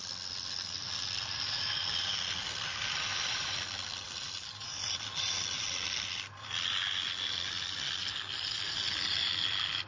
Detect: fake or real real